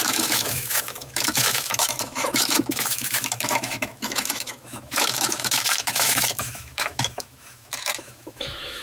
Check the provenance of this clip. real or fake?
fake